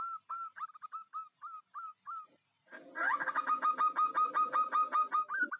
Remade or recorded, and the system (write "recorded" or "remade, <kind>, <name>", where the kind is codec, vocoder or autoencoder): recorded